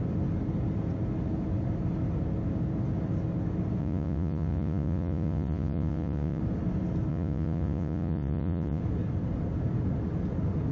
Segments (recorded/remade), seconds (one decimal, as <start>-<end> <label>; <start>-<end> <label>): 0.0-3.8 recorded; 3.8-6.4 remade; 6.4-7.1 recorded; 7.1-8.8 remade; 8.8-10.7 recorded

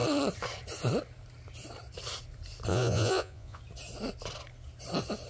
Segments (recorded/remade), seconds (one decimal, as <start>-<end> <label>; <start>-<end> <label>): 0.0-2.7 recorded; 2.7-3.6 remade; 3.6-5.3 recorded

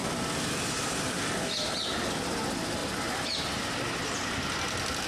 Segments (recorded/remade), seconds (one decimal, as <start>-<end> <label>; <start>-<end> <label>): 0.0-5.1 recorded

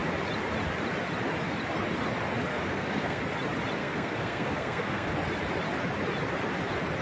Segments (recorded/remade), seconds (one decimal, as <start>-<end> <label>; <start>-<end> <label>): 0.0-2.5 recorded; 2.5-3.2 remade; 3.2-3.8 recorded; 3.8-5.1 remade; 5.1-7.0 recorded

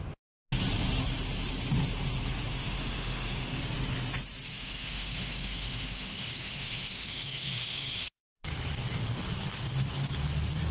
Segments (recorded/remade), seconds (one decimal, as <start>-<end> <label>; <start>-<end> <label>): 0.0-2.5 recorded; 2.5-3.6 remade; 3.6-4.5 recorded; 4.5-8.2 remade; 8.2-10.7 recorded